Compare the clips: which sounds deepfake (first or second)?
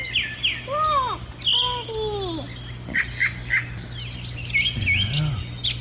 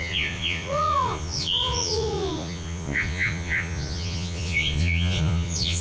second